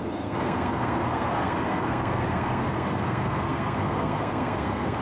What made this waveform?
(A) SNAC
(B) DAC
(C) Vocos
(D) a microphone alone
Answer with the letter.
A